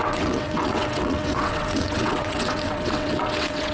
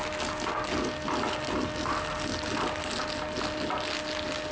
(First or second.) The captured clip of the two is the second